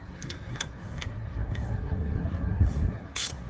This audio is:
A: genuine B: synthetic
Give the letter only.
B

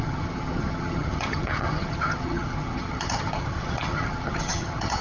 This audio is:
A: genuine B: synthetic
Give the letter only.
B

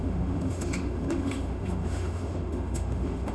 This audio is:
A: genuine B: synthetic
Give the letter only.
B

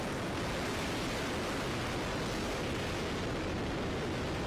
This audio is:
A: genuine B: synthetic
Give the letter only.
A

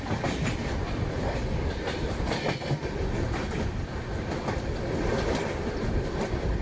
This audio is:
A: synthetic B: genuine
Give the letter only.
B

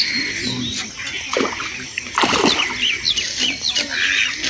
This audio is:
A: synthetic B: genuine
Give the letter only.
B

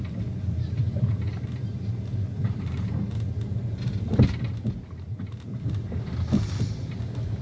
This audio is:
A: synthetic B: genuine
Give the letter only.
B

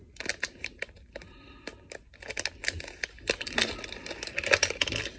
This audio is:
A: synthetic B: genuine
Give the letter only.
B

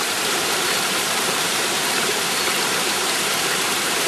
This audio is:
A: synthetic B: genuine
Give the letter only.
A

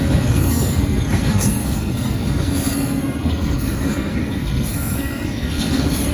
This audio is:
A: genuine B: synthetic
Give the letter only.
B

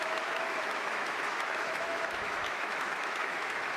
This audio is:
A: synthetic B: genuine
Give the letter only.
A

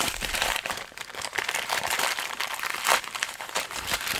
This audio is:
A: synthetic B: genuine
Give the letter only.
A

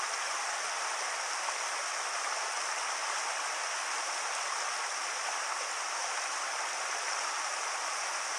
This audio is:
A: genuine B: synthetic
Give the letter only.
A